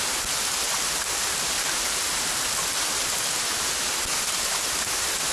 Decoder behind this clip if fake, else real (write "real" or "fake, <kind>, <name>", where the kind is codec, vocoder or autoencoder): real